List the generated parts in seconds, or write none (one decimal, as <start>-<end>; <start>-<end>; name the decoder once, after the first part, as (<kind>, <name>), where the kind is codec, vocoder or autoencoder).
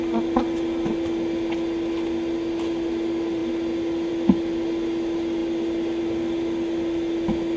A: none